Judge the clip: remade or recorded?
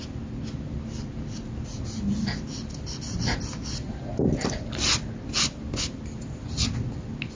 recorded